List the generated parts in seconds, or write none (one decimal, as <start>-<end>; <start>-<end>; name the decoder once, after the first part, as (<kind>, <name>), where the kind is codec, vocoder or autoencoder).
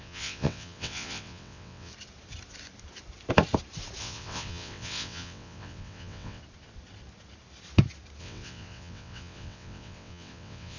0.0-1.9 (vocoder, WaveNeXt); 4.0-6.4; 8.2-10.8